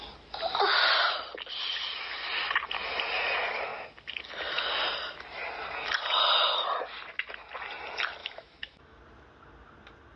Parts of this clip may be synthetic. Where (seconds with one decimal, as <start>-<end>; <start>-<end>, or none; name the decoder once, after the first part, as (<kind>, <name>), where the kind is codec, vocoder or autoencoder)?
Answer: 8.2-9.0 (autoencoder, DAC-VAE)